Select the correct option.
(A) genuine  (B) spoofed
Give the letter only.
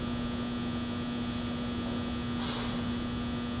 A